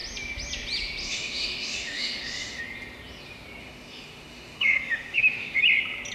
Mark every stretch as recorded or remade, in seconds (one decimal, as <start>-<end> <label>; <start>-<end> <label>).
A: 0.0-1.0 recorded; 1.0-2.6 remade; 2.6-3.6 recorded; 3.6-5.6 remade; 5.6-6.1 recorded